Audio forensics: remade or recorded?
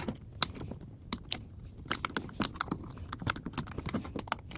recorded